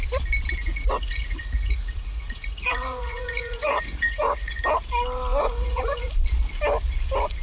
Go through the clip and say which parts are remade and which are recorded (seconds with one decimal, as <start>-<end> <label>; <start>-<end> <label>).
0.0-0.6 recorded; 0.6-4.6 remade; 4.6-5.4 recorded; 5.4-6.1 remade; 6.1-7.4 recorded

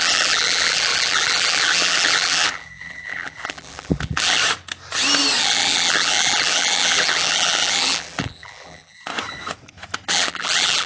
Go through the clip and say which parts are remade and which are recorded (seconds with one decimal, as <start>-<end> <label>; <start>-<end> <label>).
0.0-4.4 remade; 4.4-5.4 recorded; 5.4-9.1 remade; 9.1-10.1 recorded; 10.1-10.9 remade

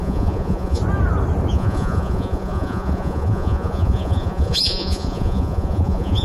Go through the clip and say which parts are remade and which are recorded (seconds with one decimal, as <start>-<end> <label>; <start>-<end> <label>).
0.0-0.8 remade; 0.8-1.5 recorded; 1.5-6.2 remade

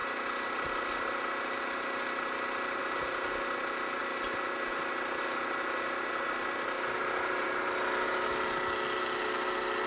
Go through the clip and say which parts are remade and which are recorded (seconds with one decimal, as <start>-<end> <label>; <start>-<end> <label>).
0.0-9.9 recorded

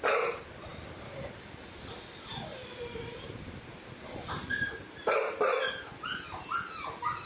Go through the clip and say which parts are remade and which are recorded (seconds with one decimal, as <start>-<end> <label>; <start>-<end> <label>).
0.0-2.5 recorded; 2.5-5.3 remade; 5.3-7.3 recorded

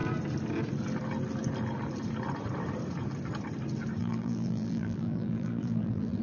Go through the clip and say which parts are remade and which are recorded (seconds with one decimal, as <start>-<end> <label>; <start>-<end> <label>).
0.0-4.0 recorded; 4.0-6.2 remade

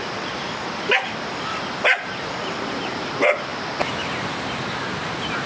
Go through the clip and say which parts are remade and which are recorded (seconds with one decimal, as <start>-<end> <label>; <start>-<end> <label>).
0.0-5.5 recorded